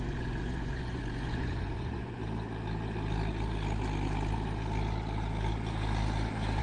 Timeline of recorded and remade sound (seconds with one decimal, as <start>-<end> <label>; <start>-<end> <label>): 0.0-2.2 remade; 2.2-6.6 recorded